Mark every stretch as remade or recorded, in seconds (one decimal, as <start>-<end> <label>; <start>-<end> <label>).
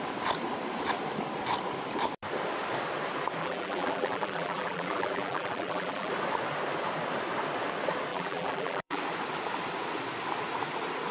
0.0-3.4 recorded; 3.4-6.1 remade; 6.1-8.1 recorded; 8.1-9.0 remade; 9.0-11.1 recorded